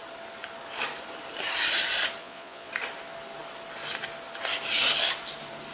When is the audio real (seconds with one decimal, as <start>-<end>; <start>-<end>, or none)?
0.0-2.2; 2.7-5.7